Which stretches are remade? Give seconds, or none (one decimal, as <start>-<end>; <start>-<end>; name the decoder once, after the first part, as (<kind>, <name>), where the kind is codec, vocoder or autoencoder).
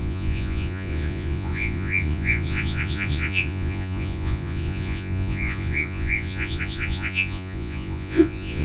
0.0-8.6 (vocoder, Vocos)